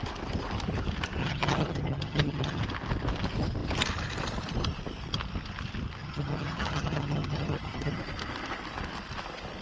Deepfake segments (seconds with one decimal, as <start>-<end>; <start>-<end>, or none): 1.2-2.6; 6.0-8.0